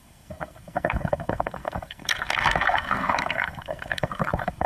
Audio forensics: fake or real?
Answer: fake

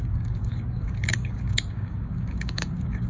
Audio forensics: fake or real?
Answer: fake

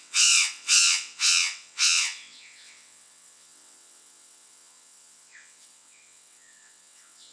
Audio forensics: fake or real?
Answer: fake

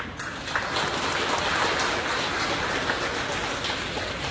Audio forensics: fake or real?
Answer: real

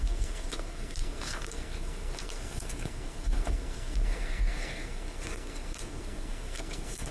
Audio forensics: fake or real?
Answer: fake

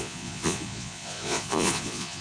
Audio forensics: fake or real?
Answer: fake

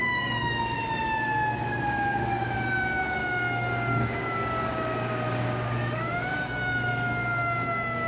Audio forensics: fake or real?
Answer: fake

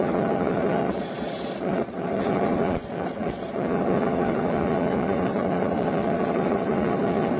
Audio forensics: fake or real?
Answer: fake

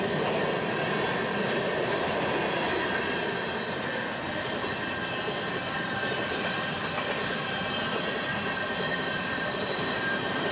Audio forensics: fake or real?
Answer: real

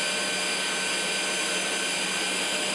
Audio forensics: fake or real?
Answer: real